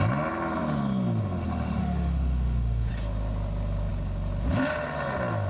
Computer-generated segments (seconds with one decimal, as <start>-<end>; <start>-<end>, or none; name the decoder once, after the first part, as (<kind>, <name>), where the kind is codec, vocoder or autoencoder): 1.8-2.9 (autoencoder, DAC-VAE)